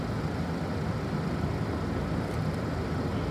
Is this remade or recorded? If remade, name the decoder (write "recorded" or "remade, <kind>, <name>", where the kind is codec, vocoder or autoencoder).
recorded